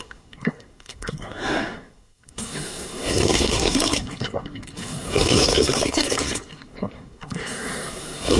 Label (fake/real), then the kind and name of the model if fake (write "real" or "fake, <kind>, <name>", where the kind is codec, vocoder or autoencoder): fake, codec, SNAC